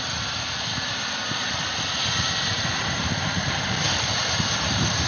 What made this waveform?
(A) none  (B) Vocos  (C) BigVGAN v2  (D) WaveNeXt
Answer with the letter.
C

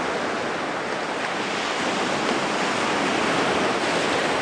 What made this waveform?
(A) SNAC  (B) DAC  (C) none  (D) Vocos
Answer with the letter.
C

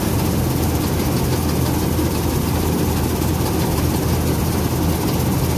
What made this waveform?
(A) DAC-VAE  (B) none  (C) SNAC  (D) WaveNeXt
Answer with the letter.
B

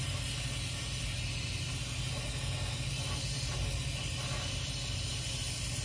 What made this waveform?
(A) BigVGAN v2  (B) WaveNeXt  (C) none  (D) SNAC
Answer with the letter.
C